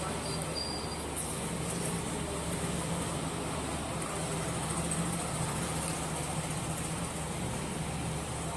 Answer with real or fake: real